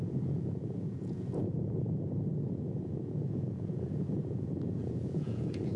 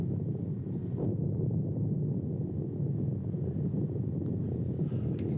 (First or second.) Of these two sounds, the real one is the second